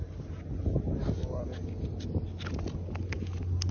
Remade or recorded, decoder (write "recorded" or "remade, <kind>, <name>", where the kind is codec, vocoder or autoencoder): recorded